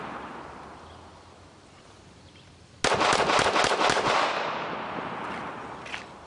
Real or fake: real